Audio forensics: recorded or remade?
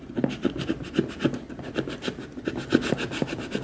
recorded